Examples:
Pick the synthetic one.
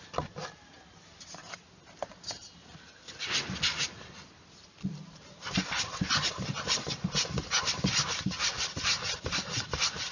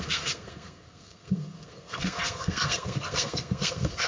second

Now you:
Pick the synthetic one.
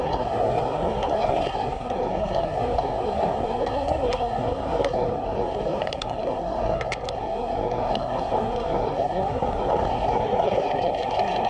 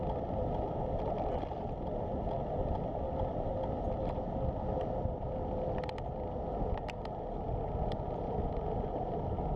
first